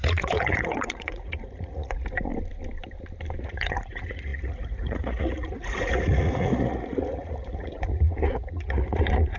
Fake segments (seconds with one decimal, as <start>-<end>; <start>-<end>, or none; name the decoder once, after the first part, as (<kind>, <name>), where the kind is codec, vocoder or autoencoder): 0.0-2.3 (vocoder, Vocos); 3.4-9.4